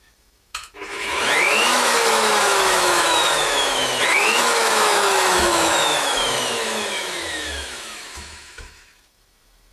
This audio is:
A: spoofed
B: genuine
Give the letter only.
A